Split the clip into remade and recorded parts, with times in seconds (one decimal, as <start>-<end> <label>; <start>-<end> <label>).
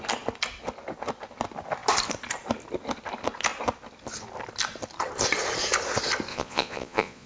0.0-6.3 recorded; 6.3-7.3 remade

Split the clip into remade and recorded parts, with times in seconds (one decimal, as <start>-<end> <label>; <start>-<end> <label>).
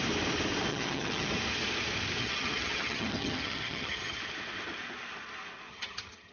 0.0-0.7 recorded; 0.7-1.3 remade; 1.3-2.2 recorded; 2.2-4.2 remade; 4.2-5.7 recorded; 5.7-6.3 remade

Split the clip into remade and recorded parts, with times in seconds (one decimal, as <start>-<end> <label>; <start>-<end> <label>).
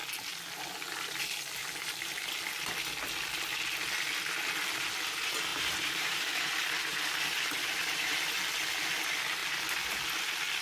0.0-5.5 recorded; 5.5-6.4 remade; 6.4-6.9 recorded; 6.9-8.2 remade; 8.2-10.6 recorded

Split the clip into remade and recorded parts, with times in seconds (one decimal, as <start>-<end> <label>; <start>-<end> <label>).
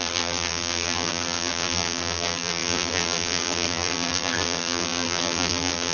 0.0-5.9 remade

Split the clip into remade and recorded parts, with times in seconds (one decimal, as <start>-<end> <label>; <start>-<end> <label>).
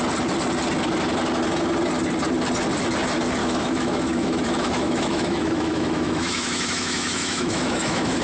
0.0-3.4 recorded; 3.4-8.2 remade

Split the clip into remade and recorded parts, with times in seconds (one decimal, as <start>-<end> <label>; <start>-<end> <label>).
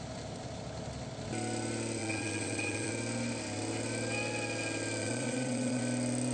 0.0-2.0 recorded; 2.0-2.9 remade; 2.9-5.0 recorded; 5.0-5.8 remade; 5.8-6.3 recorded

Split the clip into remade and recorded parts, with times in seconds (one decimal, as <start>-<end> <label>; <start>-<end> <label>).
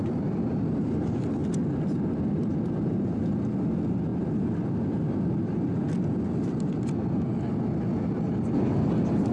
0.0-9.3 recorded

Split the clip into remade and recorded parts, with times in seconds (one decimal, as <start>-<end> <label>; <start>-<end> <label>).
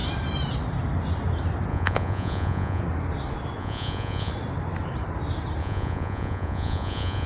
0.0-1.7 recorded; 1.7-2.8 remade; 2.8-3.6 recorded; 3.6-4.3 remade; 4.3-5.6 recorded; 5.6-7.3 remade